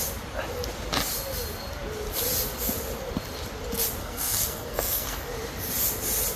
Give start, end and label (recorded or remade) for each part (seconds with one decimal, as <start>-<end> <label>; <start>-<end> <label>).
0.0-4.0 recorded; 4.0-5.3 remade; 5.3-6.4 recorded